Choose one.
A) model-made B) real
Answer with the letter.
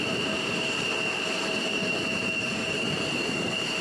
A